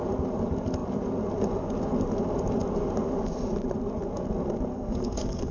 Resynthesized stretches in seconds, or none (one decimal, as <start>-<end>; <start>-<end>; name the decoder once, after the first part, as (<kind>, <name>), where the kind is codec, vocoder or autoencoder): 4.7-5.5 (codec, SNAC)